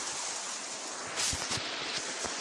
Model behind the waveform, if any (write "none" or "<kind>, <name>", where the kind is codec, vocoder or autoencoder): none